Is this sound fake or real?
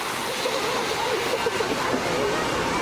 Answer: real